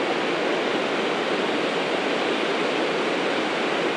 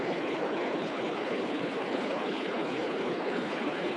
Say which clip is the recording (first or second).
first